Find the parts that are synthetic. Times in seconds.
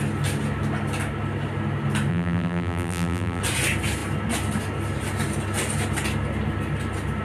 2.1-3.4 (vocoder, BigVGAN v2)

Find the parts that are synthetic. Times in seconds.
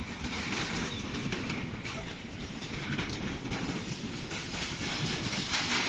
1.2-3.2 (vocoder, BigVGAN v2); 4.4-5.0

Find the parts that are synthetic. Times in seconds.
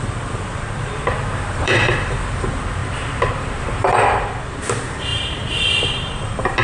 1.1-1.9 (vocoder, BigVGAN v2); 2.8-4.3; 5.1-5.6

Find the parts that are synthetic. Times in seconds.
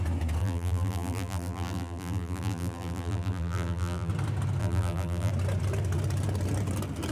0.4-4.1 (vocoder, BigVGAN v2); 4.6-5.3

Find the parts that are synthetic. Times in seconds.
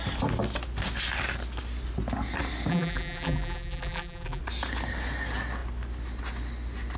2.7-4.4 (vocoder, BigVGAN v2)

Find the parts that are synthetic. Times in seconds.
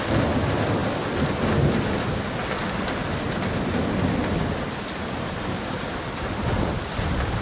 0.0-0.8 (vocoder, BigVGAN v2); 5.2-7.4